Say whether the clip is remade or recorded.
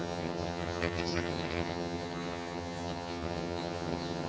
remade